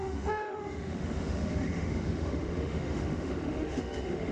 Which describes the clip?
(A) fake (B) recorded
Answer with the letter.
A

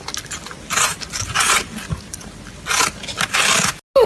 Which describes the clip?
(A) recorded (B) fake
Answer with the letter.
A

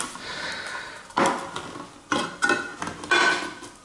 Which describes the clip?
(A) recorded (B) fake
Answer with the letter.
A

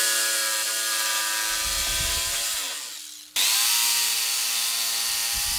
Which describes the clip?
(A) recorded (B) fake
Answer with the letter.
A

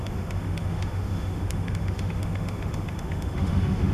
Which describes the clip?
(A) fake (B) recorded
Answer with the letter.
A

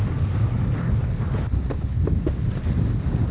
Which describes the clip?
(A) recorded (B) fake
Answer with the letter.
A